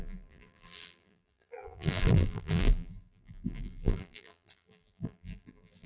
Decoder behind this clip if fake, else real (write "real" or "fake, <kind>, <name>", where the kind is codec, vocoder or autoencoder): fake, vocoder, BigVGAN v2